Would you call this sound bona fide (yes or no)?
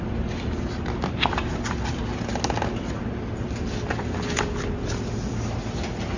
yes